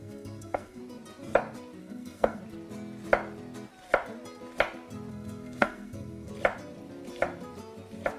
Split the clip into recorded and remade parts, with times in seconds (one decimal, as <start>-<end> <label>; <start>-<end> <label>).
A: 0.0-0.8 remade; 0.8-1.8 recorded; 1.8-2.4 remade; 2.4-5.1 recorded; 5.1-6.3 remade; 6.3-8.2 recorded